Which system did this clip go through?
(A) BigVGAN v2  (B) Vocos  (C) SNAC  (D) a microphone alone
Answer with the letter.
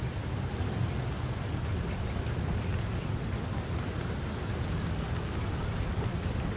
D